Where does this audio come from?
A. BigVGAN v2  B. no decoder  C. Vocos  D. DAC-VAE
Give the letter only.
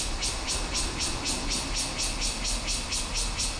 B